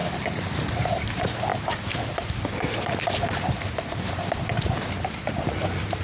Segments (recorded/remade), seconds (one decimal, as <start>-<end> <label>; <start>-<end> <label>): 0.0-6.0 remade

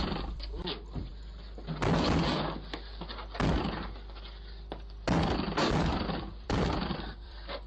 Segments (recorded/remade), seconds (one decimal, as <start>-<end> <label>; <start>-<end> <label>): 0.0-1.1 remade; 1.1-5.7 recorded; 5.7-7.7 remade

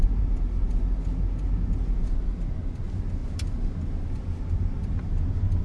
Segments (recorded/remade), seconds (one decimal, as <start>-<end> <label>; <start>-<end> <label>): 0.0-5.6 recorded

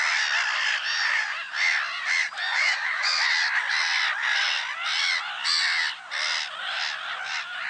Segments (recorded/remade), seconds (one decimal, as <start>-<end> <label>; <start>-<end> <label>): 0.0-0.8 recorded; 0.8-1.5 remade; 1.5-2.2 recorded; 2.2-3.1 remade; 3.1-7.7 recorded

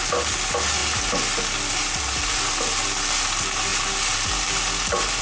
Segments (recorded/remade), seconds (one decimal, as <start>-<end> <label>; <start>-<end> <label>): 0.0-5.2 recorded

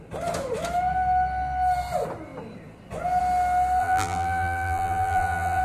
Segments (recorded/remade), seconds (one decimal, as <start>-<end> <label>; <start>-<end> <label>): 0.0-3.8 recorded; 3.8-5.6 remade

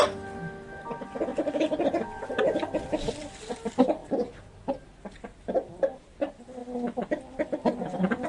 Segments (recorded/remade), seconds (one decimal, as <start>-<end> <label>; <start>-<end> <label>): 0.0-8.3 recorded

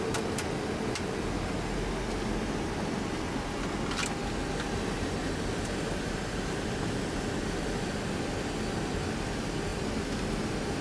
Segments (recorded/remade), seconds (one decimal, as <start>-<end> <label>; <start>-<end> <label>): 0.0-4.4 recorded; 4.4-8.1 remade; 8.1-9.7 recorded; 9.7-10.3 remade; 10.3-10.8 recorded